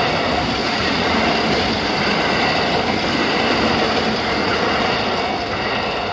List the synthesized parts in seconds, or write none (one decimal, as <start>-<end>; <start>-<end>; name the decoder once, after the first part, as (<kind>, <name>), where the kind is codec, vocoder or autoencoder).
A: 0.6-1.3 (vocoder, Vocos); 4.4-4.9

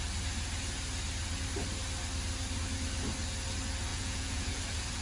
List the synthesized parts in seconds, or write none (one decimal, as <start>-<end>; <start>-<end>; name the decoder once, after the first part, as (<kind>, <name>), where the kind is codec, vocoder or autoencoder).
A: 3.9-4.6 (vocoder, Vocos)

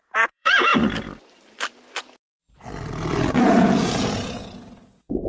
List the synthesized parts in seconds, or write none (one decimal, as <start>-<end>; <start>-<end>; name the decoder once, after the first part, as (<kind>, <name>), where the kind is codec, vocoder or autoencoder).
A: 0.0-0.7 (vocoder, Vocos); 3.3-5.3